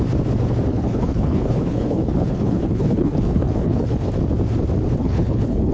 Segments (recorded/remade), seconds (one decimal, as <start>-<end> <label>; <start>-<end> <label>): 0.0-0.7 recorded; 0.7-4.1 remade; 4.1-5.0 recorded; 5.0-5.7 remade

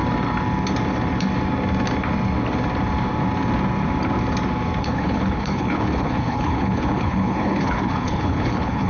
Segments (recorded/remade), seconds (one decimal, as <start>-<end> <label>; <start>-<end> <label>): 0.0-4.8 recorded; 4.8-8.9 remade

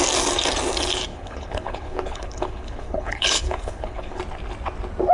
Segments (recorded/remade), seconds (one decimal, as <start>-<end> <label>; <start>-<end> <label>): 0.0-1.1 recorded; 1.1-4.2 remade; 4.2-5.1 recorded